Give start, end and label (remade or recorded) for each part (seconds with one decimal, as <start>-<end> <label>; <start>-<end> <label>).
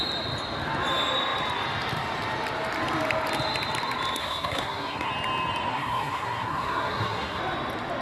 0.0-4.2 recorded; 4.2-5.1 remade; 5.1-5.7 recorded; 5.7-7.4 remade; 7.4-8.0 recorded